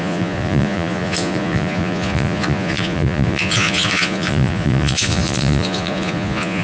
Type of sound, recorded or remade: remade